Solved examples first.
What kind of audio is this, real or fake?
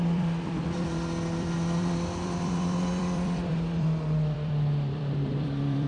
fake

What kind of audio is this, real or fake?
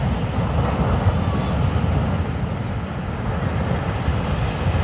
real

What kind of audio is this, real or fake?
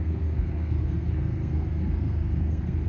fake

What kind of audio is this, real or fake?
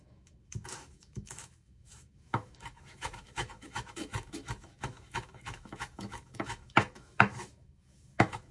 fake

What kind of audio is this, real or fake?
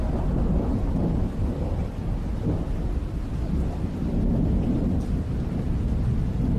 real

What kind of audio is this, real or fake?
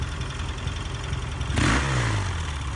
real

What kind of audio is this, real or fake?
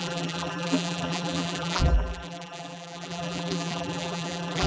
fake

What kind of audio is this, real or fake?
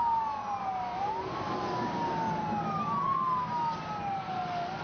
real